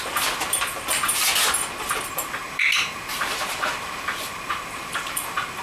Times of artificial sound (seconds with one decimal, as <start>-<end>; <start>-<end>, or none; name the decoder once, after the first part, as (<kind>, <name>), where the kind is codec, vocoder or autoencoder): 2.4-5.6 (vocoder, BigVGAN v2)